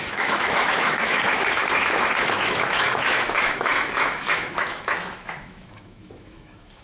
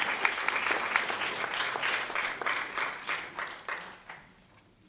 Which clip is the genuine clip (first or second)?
second